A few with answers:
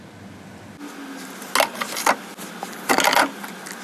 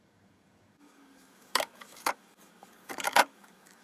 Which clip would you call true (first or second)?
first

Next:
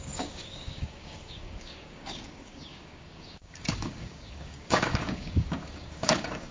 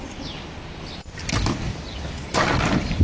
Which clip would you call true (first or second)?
second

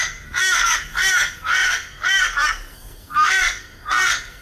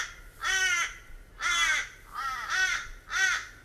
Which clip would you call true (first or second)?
second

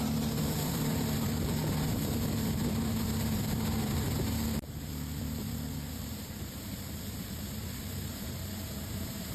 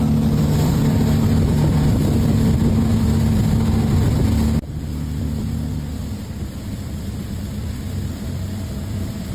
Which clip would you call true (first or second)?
second